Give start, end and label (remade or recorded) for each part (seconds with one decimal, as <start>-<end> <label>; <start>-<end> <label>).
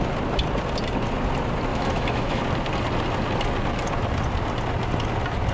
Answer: 0.0-1.7 recorded; 1.7-2.4 remade; 2.4-5.5 recorded